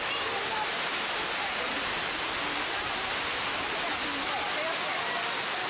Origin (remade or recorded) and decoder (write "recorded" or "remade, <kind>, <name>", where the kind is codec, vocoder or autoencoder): recorded